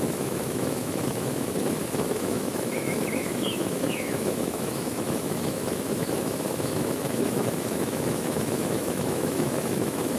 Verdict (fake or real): fake